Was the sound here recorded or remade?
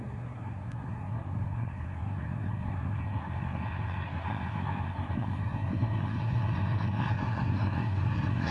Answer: remade